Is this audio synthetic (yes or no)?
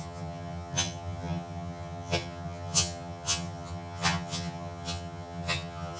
yes